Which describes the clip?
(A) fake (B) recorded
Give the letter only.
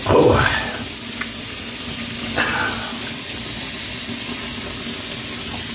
B